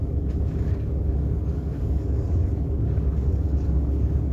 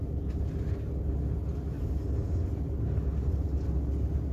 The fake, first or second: first